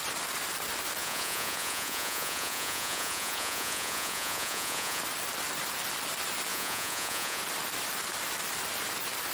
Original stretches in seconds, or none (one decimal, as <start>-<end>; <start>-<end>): 0.0-1.0; 5.0-6.5; 7.4-9.3